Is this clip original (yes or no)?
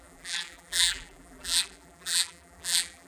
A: no